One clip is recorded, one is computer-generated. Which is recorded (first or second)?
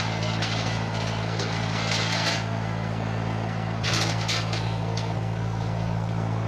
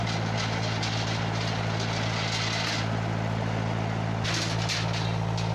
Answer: second